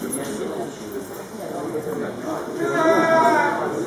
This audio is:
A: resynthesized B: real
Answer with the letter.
B